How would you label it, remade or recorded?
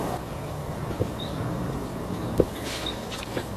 remade